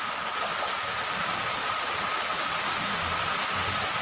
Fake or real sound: real